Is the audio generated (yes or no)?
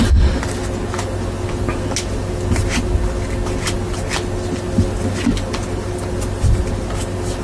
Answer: no